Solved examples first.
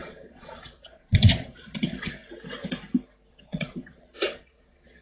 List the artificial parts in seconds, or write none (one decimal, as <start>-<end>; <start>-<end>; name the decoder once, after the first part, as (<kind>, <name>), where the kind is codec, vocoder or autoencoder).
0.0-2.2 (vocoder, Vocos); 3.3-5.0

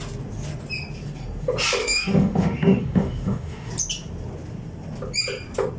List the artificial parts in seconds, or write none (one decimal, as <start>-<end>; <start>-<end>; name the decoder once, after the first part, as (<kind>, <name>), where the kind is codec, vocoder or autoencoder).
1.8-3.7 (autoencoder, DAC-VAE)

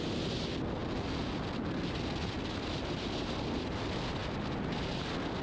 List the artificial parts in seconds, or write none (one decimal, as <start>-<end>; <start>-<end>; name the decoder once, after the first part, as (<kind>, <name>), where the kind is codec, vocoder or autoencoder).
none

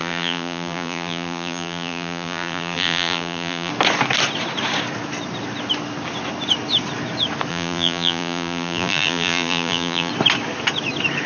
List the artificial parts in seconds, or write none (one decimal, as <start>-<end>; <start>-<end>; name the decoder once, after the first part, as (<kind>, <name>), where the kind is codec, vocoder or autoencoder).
0.0-3.7 (vocoder, BigVGAN v2); 7.5-10.1

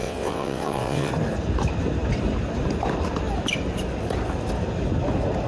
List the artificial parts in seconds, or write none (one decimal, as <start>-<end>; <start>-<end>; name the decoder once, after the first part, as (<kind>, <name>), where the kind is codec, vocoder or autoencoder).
0.0-1.1 (vocoder, WaveNeXt)